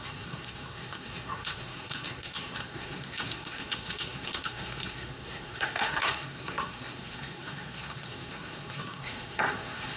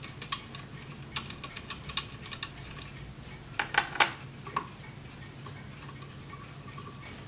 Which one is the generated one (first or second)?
first